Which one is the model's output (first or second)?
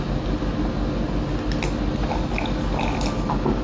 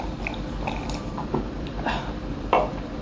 second